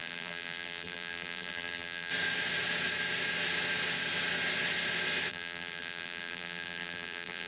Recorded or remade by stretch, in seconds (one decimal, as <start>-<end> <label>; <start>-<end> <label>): 0.0-2.1 remade; 2.1-5.3 recorded; 5.3-7.5 remade